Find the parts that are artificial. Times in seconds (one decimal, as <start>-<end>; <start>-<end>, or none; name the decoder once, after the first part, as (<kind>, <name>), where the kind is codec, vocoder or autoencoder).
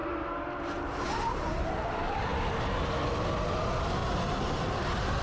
0.0-1.7 (vocoder, BigVGAN v2); 4.0-4.8